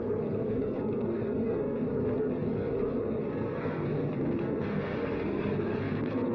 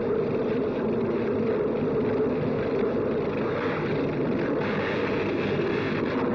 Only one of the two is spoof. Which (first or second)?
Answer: first